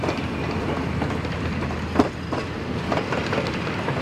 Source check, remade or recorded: remade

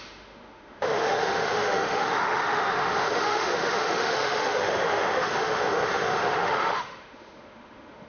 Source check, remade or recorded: remade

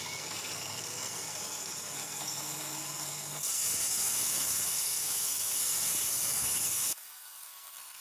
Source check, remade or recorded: remade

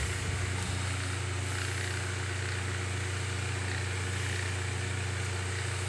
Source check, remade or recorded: recorded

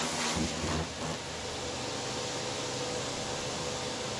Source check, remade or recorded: recorded